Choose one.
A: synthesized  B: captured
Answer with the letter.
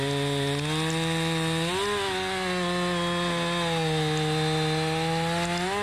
B